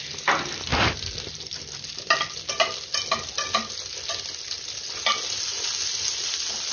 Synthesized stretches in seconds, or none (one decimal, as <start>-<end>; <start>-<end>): none